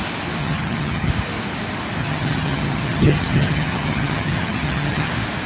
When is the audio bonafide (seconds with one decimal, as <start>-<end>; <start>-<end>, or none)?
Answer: 0.0-0.4; 1.1-2.0; 5.1-5.5